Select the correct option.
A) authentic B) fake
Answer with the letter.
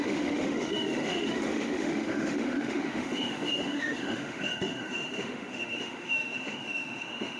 B